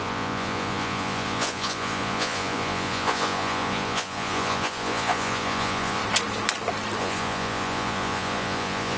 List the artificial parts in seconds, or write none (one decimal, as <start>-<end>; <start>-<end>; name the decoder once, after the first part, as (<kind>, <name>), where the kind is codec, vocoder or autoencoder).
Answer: 0.0-6.0 (vocoder, Vocos); 7.0-9.0